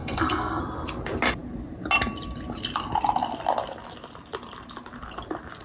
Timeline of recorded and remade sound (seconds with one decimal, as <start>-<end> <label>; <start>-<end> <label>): 0.0-0.6 remade; 0.6-5.6 recorded